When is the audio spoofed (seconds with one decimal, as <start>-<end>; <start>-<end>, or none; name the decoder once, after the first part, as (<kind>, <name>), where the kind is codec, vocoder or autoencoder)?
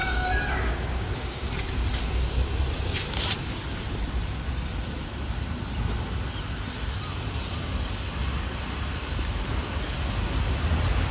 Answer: 0.0-1.5 (codec, DAC)